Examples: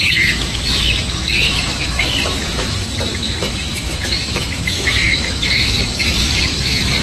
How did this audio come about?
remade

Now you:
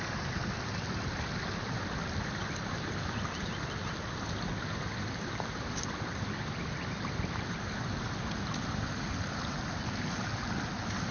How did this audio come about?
recorded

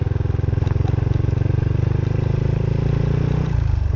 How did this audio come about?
recorded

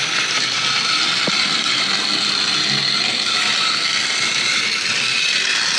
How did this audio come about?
recorded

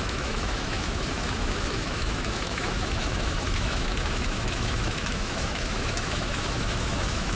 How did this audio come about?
remade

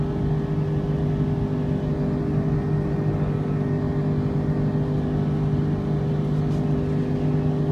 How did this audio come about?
recorded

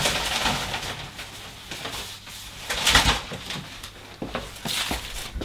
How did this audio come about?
recorded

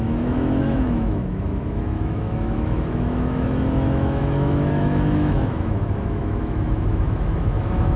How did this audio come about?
remade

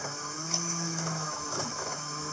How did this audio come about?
remade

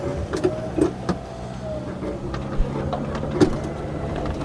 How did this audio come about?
recorded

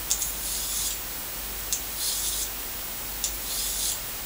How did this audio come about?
recorded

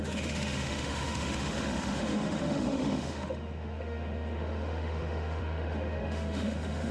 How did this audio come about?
remade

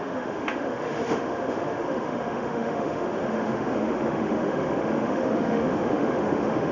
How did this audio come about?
remade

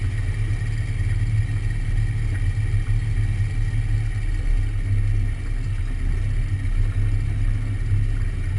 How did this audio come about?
recorded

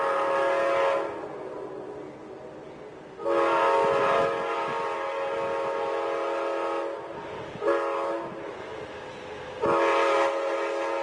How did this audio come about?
recorded